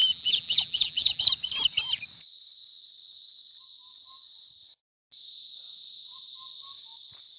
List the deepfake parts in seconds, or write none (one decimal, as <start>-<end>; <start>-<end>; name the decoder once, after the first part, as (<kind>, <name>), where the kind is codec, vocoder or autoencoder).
0.0-1.2 (vocoder, BigVGAN v2)